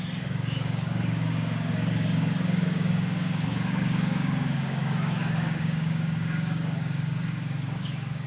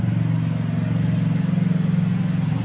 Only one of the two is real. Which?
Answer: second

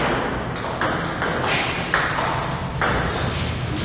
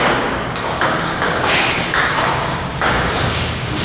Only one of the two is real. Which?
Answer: first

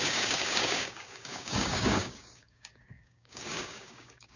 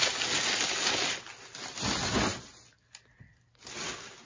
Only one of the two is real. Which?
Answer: second